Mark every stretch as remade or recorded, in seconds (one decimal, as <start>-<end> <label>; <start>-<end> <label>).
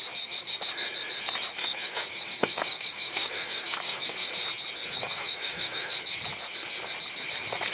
0.0-1.6 recorded; 1.6-4.3 remade; 4.3-4.9 recorded; 4.9-5.9 remade; 5.9-7.7 recorded